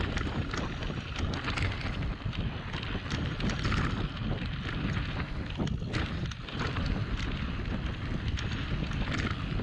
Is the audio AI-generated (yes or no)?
no